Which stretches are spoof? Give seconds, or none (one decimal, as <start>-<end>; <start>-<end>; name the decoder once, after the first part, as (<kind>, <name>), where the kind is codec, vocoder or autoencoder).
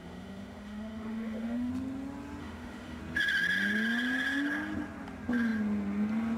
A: 0.0-1.7 (autoencoder, DAC-VAE); 2.4-3.0